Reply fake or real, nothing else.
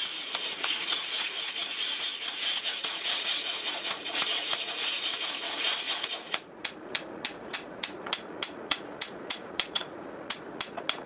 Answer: fake